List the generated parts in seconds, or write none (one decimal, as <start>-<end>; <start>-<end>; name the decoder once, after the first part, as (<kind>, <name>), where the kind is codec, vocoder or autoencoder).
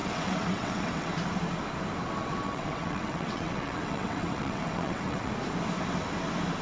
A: 0.0-1.1 (vocoder, WaveNeXt); 2.2-5.3